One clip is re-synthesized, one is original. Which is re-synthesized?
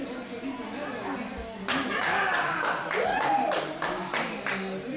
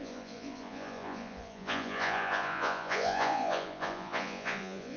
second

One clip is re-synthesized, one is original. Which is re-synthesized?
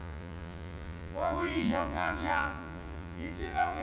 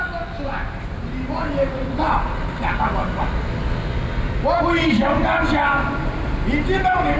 first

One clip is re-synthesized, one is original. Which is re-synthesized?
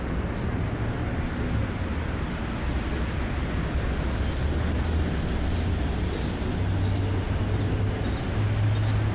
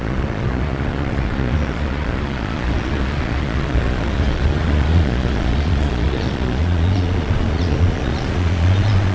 second